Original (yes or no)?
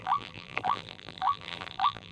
no